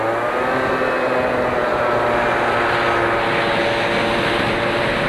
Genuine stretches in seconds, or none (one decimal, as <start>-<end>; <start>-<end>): 0.0-5.1